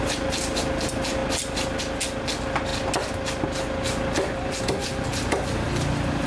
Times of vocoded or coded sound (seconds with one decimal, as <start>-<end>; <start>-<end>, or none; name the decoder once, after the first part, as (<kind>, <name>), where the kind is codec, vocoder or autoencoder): none